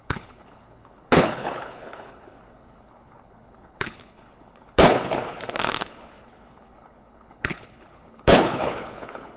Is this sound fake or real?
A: fake